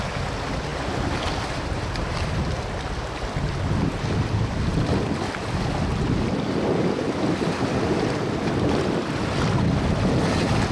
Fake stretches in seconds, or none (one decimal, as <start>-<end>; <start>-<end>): none